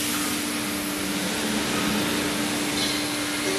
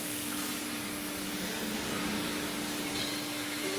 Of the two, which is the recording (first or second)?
first